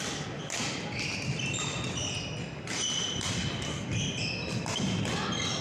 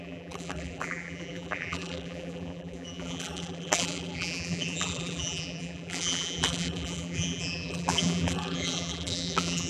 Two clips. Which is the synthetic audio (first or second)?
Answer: second